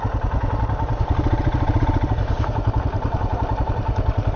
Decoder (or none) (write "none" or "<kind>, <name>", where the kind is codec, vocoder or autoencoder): vocoder, BigVGAN v2